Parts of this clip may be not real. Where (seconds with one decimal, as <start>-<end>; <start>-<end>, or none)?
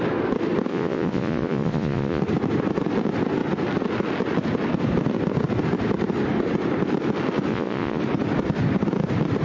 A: 0.7-2.2; 7.5-8.0